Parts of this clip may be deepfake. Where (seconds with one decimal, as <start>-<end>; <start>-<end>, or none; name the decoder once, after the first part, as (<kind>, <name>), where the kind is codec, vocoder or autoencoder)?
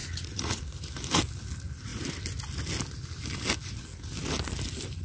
0.0-0.6 (vocoder, Vocos)